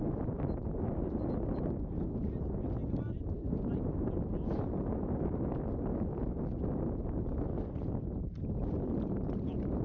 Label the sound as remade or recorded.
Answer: recorded